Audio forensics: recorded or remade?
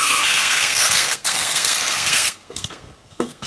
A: remade